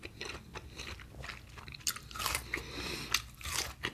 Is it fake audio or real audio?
real